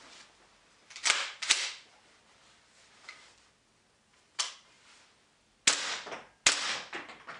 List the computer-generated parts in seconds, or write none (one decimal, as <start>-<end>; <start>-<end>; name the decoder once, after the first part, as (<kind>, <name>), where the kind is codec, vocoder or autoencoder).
4.1-4.8 (vocoder, BigVGAN v2)